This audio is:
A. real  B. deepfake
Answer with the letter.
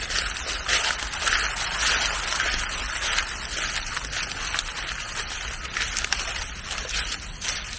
A